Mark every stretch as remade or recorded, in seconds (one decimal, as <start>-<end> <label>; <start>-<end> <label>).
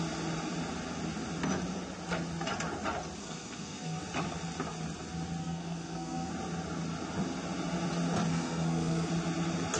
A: 0.0-3.2 recorded; 3.2-4.0 remade; 4.0-5.4 recorded; 5.4-6.3 remade; 6.3-8.3 recorded; 8.3-9.1 remade; 9.1-9.8 recorded